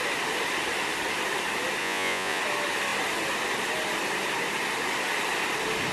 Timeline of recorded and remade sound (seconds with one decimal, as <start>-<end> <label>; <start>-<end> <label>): 0.0-1.8 recorded; 1.8-2.4 remade; 2.4-5.9 recorded